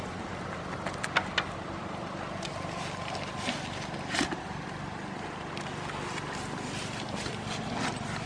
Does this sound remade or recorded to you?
recorded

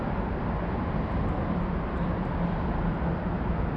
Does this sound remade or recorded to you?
recorded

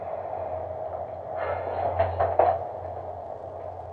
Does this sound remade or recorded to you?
recorded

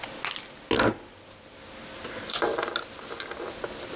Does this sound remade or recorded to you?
recorded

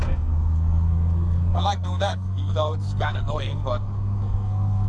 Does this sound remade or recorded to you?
remade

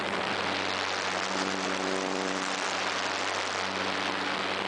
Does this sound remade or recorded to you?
recorded